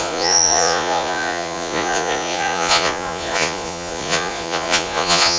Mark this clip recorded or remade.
remade